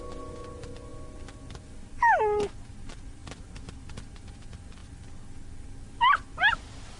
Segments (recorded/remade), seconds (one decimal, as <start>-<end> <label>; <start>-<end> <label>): 0.0-7.0 recorded